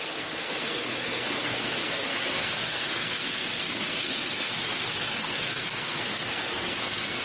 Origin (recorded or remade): remade